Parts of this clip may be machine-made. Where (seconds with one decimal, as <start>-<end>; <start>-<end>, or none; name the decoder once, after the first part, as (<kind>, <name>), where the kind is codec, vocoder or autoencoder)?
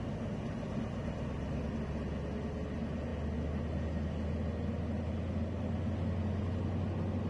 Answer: none